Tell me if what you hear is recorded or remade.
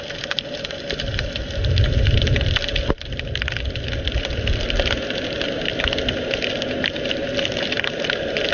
recorded